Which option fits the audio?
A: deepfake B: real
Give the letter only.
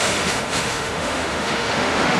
A